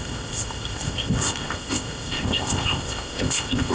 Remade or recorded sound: remade